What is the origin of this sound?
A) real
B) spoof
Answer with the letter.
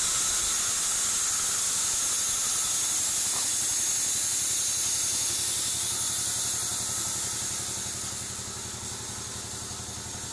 A